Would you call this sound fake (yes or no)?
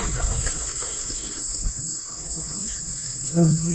yes